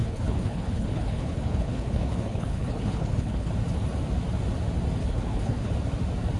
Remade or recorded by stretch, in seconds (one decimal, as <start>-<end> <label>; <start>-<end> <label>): 0.0-3.5 remade; 3.5-5.0 recorded; 5.0-5.7 remade; 5.7-6.4 recorded